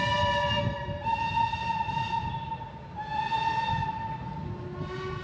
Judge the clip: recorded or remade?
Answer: recorded